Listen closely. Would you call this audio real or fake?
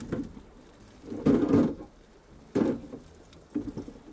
real